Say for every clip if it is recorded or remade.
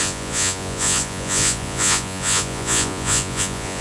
remade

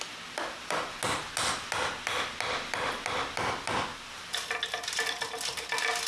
recorded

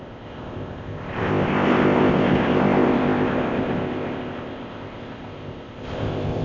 remade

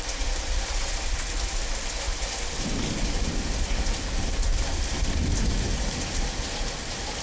recorded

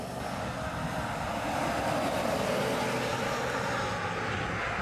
recorded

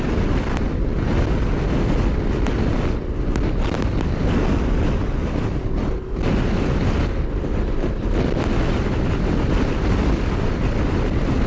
recorded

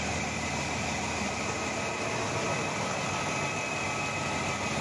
recorded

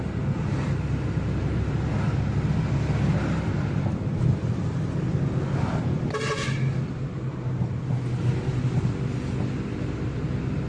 recorded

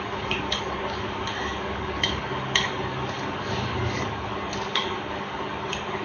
remade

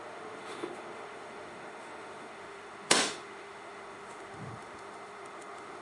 remade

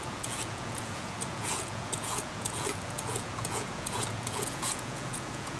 remade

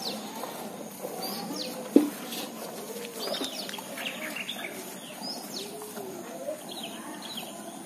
recorded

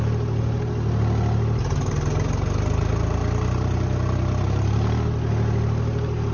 recorded